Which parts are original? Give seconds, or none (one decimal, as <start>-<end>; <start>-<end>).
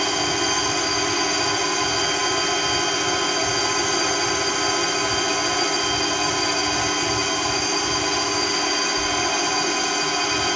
0.0-10.6